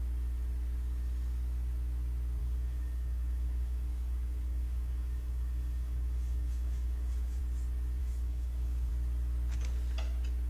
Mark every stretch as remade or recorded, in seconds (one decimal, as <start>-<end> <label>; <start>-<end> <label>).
0.0-2.4 recorded; 2.4-7.4 remade; 7.4-8.0 recorded; 8.0-8.9 remade; 8.9-10.5 recorded